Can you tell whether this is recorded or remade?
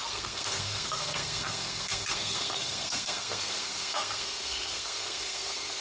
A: remade